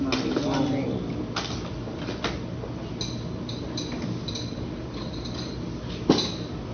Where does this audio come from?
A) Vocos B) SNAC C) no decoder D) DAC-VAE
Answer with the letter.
C